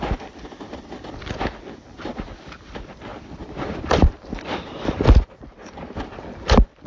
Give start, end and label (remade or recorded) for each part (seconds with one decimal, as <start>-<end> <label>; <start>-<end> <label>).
0.0-3.1 recorded; 3.1-4.7 remade; 4.7-6.9 recorded

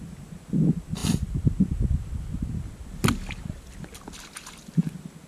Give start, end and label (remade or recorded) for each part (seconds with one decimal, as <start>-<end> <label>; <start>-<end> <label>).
0.0-5.3 recorded

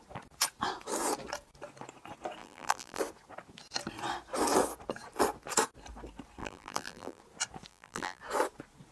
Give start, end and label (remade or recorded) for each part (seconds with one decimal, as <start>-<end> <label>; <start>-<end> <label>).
0.0-2.4 recorded; 2.4-3.0 remade; 3.0-6.4 recorded; 6.4-7.2 remade; 7.2-7.7 recorded; 7.7-8.2 remade; 8.2-8.9 recorded

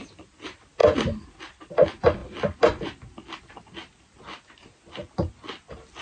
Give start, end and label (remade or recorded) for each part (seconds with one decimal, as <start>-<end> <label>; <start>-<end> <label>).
0.0-6.0 recorded

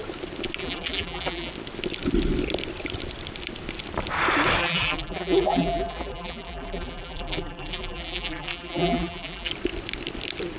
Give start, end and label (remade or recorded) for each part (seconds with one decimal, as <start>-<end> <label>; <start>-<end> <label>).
0.0-0.6 recorded; 0.6-1.5 remade; 1.5-4.6 recorded; 4.6-9.5 remade; 9.5-10.6 recorded

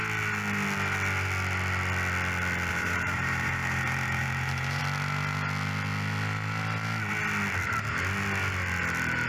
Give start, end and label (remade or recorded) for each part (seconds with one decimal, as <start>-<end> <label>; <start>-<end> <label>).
0.0-2.7 recorded; 2.7-4.8 remade; 4.8-9.3 recorded